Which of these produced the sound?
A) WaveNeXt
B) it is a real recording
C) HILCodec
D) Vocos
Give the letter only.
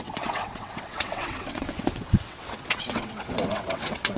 A